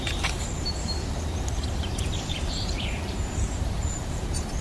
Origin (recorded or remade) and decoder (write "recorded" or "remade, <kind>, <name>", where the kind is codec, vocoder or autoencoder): remade, vocoder, BigVGAN v2